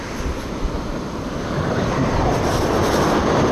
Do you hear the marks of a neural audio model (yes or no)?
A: no